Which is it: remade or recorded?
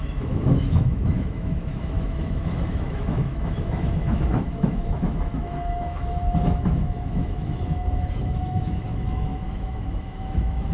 remade